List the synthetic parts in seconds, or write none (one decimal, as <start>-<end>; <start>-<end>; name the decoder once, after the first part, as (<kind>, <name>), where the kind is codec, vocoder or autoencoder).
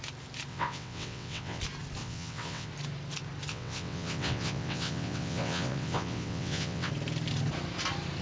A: 0.5-1.6 (vocoder, WaveNeXt); 2.0-2.7; 3.5-6.9